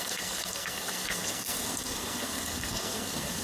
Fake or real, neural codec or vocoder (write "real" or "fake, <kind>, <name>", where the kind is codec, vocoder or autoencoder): fake, codec, SNAC